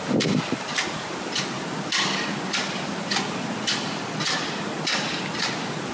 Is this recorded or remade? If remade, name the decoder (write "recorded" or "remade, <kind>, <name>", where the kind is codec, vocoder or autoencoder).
recorded